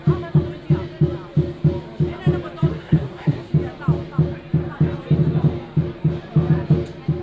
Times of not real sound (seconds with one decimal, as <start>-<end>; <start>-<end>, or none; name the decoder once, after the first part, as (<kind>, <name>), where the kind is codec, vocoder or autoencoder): 2.7-3.5 (codec, SNAC)